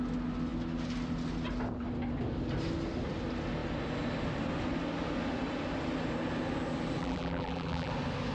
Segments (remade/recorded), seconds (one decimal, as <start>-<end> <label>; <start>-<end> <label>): 0.0-7.0 recorded; 7.0-7.9 remade; 7.9-8.3 recorded